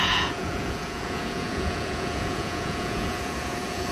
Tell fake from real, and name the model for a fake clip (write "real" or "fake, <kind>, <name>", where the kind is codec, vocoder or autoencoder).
fake, vocoder, Vocos